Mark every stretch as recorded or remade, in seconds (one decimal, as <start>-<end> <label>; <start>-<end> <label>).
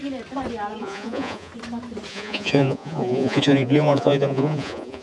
0.0-0.8 recorded; 0.8-1.5 remade; 1.5-2.1 recorded; 2.1-5.0 remade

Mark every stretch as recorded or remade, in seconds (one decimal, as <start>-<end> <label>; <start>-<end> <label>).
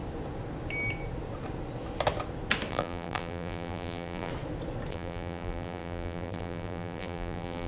0.0-2.7 recorded; 2.7-4.3 remade; 4.3-4.9 recorded; 4.9-7.7 remade